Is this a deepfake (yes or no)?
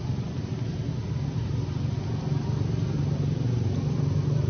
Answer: no